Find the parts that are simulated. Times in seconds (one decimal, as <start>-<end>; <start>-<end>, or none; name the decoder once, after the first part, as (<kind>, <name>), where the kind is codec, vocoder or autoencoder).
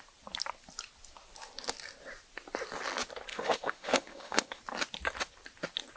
3.3-4.6 (autoencoder, DAC-VAE)